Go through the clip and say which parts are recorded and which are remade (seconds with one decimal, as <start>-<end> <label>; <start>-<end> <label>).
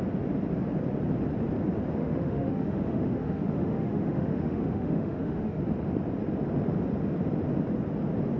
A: 0.0-2.0 recorded; 2.0-5.6 remade; 5.6-8.4 recorded